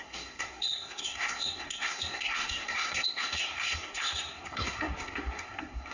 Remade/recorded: remade